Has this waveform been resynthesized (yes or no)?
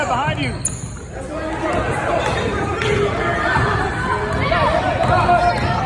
no